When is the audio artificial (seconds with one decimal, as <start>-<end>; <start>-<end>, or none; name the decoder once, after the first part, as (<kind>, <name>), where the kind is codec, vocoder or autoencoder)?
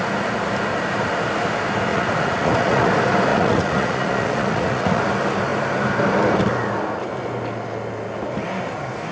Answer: 1.9-2.9 (vocoder, Vocos); 3.3-5.0